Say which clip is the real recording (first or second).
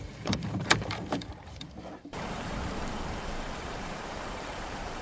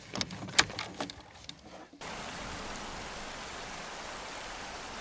second